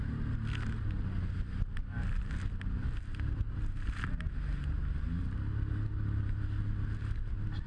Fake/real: real